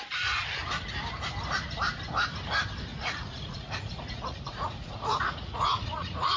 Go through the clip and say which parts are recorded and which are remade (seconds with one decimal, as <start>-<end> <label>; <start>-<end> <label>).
0.0-2.9 recorded; 2.9-6.4 remade